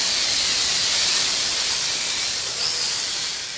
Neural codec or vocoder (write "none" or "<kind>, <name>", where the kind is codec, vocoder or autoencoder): none